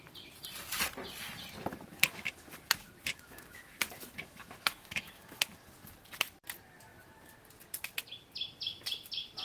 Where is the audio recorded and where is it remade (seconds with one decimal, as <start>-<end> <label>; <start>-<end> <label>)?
0.0-1.7 recorded; 1.7-5.7 remade; 5.7-9.4 recorded